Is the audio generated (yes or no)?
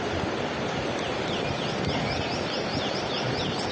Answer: no